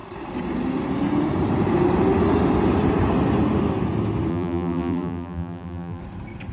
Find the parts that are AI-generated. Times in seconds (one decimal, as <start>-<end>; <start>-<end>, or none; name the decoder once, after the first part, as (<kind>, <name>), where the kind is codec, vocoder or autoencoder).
4.3-6.0 (vocoder, BigVGAN v2)

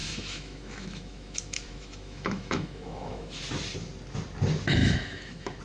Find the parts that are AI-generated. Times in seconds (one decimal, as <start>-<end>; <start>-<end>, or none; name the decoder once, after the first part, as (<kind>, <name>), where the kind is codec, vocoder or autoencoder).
0.0-3.4 (autoencoder, DAC-VAE); 4.8-5.6

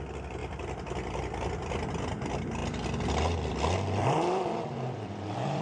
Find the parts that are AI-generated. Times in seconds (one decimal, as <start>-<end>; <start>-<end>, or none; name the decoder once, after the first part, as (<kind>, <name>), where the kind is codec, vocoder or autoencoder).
4.0-5.6 (vocoder, BigVGAN v2)

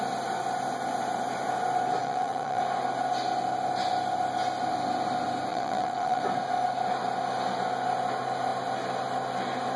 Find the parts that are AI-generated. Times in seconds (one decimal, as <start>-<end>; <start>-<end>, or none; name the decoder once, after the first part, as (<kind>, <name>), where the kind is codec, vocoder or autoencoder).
2.0-2.6 (vocoder, WaveNeXt); 5.5-6.2